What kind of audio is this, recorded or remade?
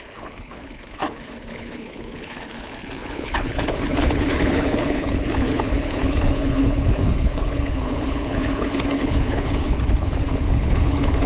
remade